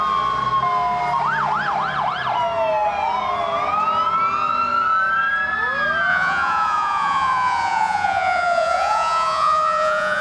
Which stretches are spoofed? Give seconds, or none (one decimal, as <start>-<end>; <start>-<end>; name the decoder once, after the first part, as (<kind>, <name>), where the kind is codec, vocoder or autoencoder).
6.1-10.2 (vocoder, Vocos)